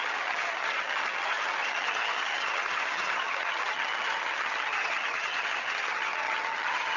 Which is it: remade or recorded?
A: remade